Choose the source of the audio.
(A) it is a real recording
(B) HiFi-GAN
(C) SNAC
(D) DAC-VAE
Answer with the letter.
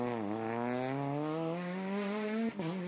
A